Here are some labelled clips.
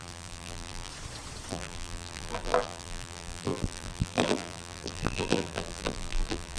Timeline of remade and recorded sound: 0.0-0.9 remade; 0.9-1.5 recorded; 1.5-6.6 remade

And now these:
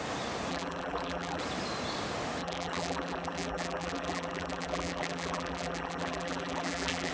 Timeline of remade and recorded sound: 0.0-0.5 recorded; 0.5-1.4 remade; 1.4-2.4 recorded; 2.4-7.1 remade

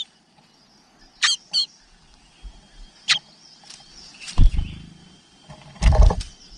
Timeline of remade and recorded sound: 0.0-1.6 recorded; 1.6-2.2 remade; 2.2-3.9 recorded; 3.9-4.4 remade; 4.4-5.0 recorded; 5.0-6.6 remade

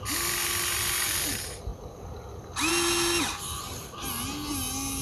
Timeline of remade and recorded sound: 0.0-5.0 recorded

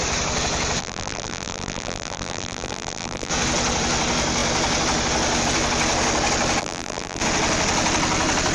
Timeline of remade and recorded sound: 0.0-0.8 recorded; 0.8-3.3 remade; 3.3-6.6 recorded; 6.6-7.2 remade; 7.2-8.5 recorded

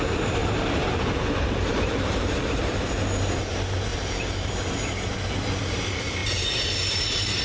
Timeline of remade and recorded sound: 0.0-0.4 recorded; 0.4-2.8 remade; 2.8-3.9 recorded; 3.9-4.5 remade; 4.5-6.2 recorded; 6.2-7.4 remade

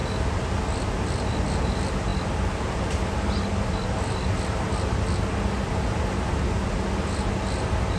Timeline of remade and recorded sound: 0.0-8.0 recorded

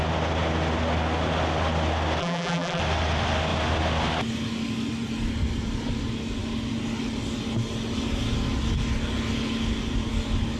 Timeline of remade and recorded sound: 0.0-2.2 recorded; 2.2-2.8 remade; 2.8-10.6 recorded